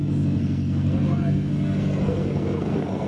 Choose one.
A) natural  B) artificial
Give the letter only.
B